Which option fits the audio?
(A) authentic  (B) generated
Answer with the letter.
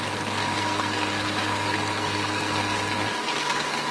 B